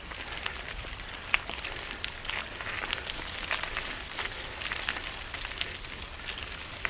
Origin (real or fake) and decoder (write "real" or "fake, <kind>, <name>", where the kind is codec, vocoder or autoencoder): real